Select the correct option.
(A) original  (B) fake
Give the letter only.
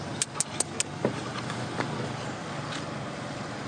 A